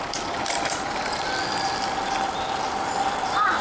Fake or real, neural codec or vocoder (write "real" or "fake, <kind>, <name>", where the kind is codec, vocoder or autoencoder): fake, vocoder, BigVGAN v2